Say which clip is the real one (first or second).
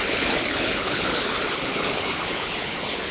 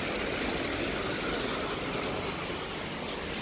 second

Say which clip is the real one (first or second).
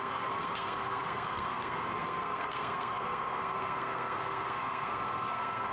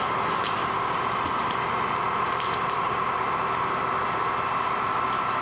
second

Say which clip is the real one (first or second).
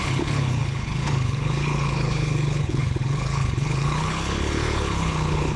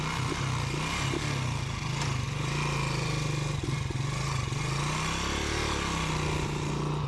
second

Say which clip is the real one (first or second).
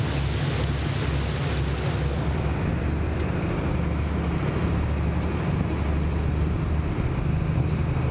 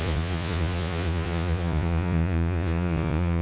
first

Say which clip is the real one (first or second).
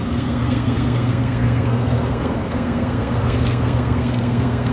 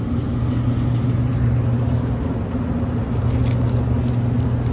second